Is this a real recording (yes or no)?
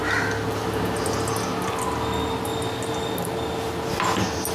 yes